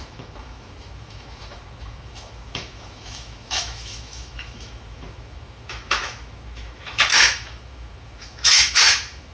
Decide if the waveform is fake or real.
fake